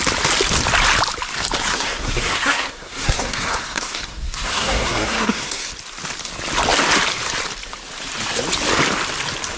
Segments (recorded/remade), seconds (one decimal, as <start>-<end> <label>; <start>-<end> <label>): 0.0-1.7 recorded; 1.7-5.7 remade; 5.7-9.6 recorded